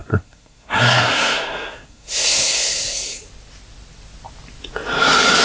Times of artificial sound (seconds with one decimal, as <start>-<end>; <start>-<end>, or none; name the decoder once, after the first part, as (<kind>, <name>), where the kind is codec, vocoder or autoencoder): 0.0-3.2 (codec, SNAC)